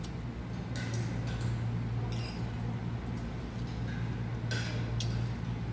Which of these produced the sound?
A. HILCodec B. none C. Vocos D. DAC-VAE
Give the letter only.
B